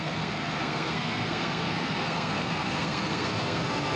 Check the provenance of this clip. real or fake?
fake